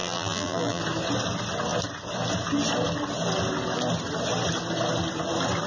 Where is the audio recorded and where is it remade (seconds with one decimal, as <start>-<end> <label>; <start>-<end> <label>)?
0.0-0.8 remade; 0.8-5.7 recorded